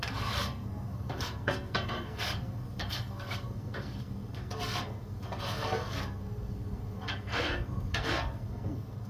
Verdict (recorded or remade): remade